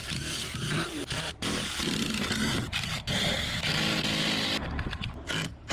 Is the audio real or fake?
real